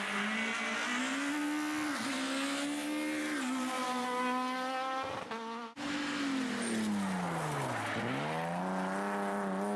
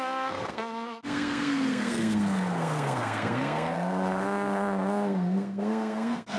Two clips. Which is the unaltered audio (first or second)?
first